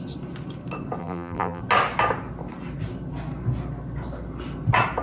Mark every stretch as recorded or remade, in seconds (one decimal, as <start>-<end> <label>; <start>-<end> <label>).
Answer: 0.0-1.0 recorded; 1.0-1.6 remade; 1.6-5.0 recorded